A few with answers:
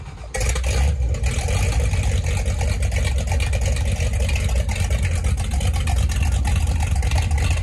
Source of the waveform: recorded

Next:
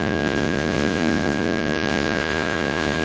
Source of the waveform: remade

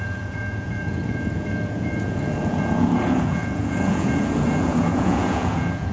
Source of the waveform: remade